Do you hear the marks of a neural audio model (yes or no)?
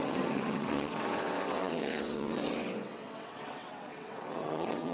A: yes